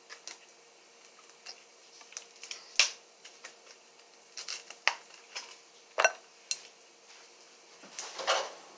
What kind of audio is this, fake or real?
real